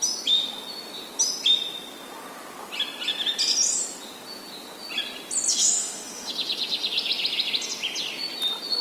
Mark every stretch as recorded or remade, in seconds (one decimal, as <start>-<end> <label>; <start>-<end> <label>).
0.0-5.5 recorded; 5.5-6.3 remade; 6.3-8.8 recorded